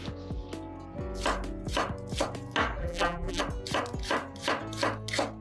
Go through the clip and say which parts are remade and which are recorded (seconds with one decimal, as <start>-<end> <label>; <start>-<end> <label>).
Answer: 0.0-2.8 recorded; 2.8-3.4 remade; 3.4-5.4 recorded